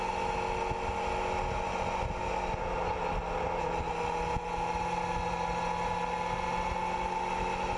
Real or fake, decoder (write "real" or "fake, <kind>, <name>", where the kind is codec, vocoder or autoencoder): real